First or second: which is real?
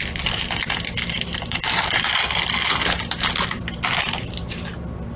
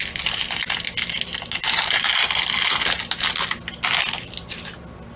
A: second